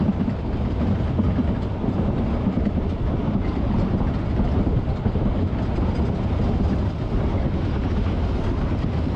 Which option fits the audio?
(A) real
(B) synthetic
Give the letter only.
A